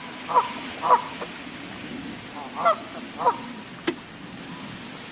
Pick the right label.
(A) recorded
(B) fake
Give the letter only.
A